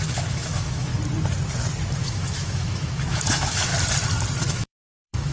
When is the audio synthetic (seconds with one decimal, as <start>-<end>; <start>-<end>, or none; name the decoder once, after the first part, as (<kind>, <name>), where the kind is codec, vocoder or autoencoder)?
0.0-0.9 (autoencoder, DAC-VAE); 2.0-3.7; 4.4-5.3